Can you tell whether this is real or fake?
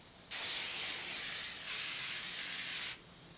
real